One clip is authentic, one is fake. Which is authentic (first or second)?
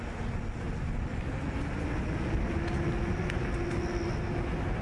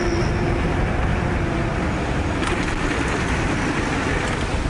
first